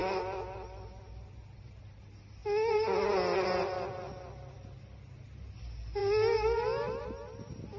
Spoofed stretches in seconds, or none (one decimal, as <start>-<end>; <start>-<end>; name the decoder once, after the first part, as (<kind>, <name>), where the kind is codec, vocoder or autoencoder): none